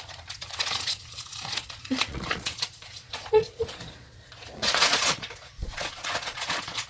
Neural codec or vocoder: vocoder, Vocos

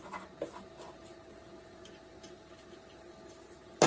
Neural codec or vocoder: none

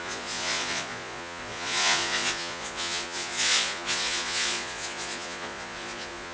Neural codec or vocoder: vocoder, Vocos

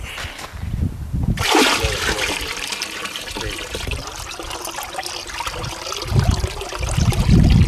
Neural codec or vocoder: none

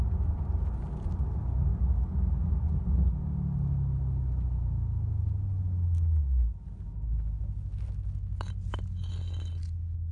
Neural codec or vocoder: none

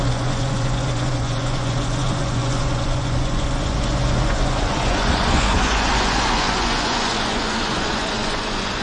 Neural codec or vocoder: vocoder, Vocos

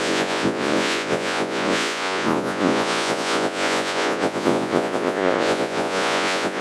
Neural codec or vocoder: vocoder, Vocos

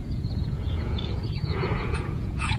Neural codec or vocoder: vocoder, Vocos